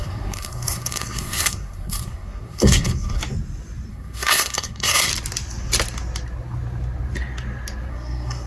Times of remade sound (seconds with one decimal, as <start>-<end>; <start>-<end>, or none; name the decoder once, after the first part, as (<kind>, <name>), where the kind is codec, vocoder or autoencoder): 0.0-3.2 (codec, SNAC); 3.9-5.1; 7.9-8.5